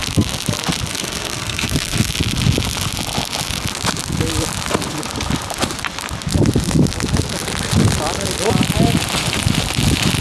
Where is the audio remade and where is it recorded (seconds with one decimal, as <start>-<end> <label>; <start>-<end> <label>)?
0.0-0.9 recorded; 0.9-2.1 remade; 2.1-10.2 recorded